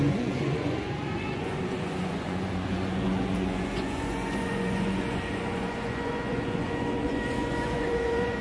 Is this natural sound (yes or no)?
no